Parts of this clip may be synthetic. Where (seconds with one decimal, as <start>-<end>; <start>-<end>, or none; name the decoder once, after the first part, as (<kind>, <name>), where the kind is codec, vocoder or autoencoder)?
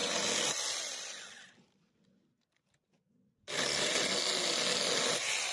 none